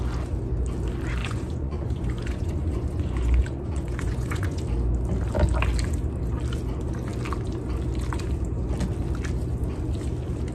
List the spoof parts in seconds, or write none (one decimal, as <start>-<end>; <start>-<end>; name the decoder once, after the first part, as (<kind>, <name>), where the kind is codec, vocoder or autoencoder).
1.2-4.6 (vocoder, Vocos)